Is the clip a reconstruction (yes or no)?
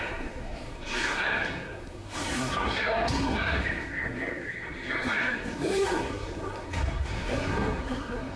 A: yes